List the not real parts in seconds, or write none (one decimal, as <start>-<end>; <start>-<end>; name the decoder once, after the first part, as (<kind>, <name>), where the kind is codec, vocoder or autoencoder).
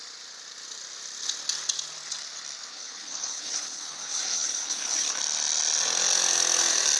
2.7-5.2 (codec, HILCodec)